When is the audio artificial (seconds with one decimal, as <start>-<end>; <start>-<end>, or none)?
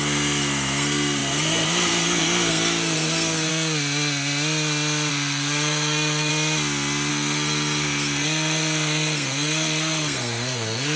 0.0-3.5; 5.1-6.3; 7.1-11.0